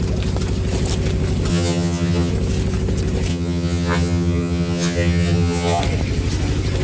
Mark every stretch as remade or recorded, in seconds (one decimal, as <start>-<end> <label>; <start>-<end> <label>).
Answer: 0.0-1.5 recorded; 1.5-2.3 remade; 2.3-3.3 recorded; 3.3-5.8 remade; 5.8-6.8 recorded